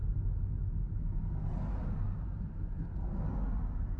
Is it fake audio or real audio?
real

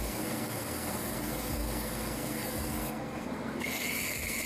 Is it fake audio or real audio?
fake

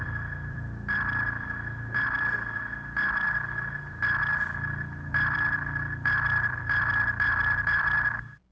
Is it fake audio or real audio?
fake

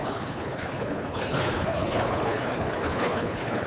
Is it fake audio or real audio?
fake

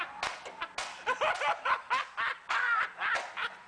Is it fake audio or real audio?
real